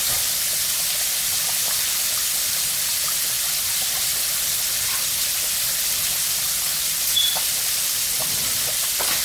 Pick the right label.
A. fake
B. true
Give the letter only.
B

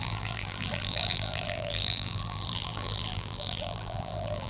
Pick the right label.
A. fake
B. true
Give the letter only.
A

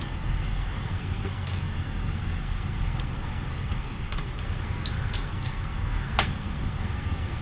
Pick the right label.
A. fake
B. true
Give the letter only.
A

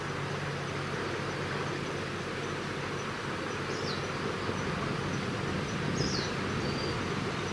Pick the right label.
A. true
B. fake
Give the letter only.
A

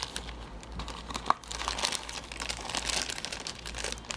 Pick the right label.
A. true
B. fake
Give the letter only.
A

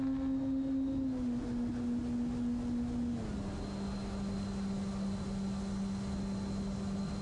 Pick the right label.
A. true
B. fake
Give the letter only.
A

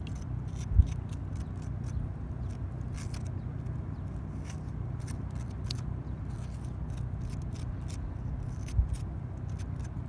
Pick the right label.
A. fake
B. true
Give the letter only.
B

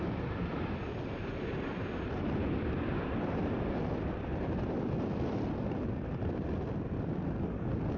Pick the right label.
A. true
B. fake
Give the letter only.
A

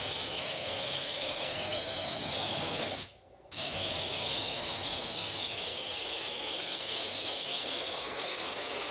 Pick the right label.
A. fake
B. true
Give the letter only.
A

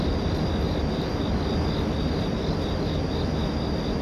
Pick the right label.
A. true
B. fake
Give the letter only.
A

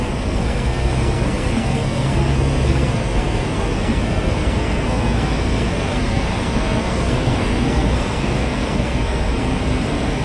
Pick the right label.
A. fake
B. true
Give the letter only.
A